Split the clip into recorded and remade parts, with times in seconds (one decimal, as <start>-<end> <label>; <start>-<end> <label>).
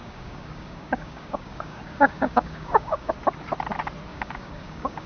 0.0-3.1 remade; 3.1-4.1 recorded; 4.1-5.1 remade